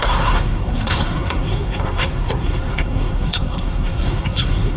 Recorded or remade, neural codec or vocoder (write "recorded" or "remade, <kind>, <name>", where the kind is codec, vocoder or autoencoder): remade, codec, SNAC